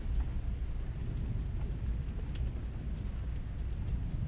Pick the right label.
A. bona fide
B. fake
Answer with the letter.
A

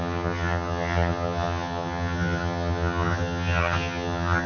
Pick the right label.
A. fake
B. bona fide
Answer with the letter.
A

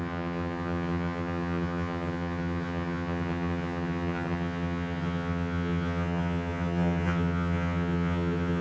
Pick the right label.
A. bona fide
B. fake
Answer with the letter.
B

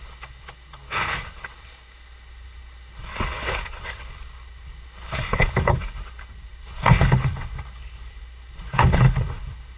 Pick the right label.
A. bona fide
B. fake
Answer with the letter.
B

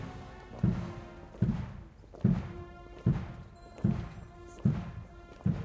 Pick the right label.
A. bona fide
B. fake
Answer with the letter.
A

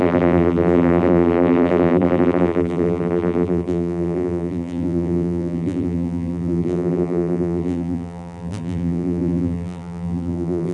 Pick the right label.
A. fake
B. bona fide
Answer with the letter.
A